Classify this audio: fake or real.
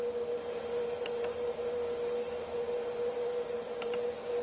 real